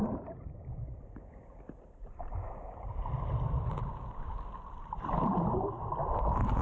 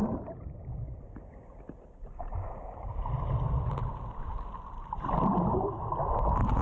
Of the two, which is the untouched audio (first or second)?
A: second